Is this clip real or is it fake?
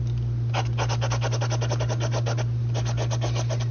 real